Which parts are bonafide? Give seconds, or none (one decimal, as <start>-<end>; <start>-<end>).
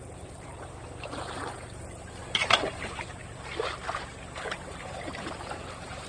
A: 2.2-4.4